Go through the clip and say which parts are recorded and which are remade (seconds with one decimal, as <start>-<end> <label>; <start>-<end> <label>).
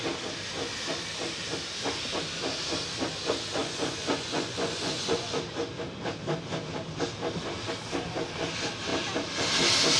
0.0-3.6 recorded; 3.6-5.4 remade; 5.4-10.0 recorded